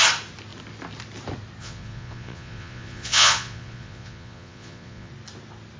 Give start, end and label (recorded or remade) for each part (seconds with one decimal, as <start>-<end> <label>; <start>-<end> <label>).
0.0-1.6 recorded; 1.6-5.1 remade; 5.1-5.8 recorded

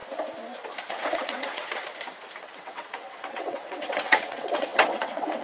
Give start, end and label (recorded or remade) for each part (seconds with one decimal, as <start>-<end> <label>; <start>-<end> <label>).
0.0-0.9 recorded; 0.9-1.8 remade; 1.8-2.4 recorded; 2.4-5.4 remade

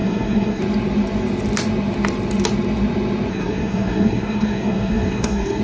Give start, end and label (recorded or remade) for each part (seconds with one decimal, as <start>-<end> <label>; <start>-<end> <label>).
0.0-0.6 remade; 0.6-3.3 recorded; 3.3-5.6 remade

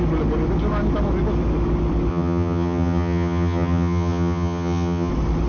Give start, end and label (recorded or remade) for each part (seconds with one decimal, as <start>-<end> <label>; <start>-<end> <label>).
0.0-2.1 recorded; 2.1-5.1 remade; 5.1-5.5 recorded

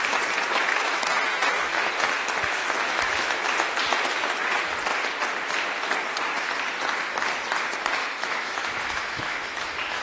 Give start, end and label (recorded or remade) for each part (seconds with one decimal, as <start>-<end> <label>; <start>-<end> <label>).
0.0-0.7 recorded; 0.7-1.9 remade; 1.9-2.6 recorded; 2.6-3.5 remade; 3.5-8.0 recorded; 8.0-10.0 remade